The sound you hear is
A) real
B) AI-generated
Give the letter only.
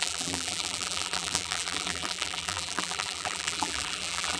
B